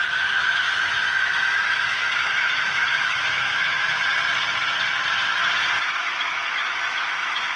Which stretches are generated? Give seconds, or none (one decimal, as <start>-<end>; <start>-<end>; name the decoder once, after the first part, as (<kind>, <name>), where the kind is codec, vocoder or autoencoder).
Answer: 0.0-4.0 (autoencoder, DAC-VAE); 5.8-7.6